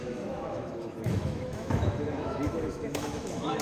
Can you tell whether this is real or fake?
fake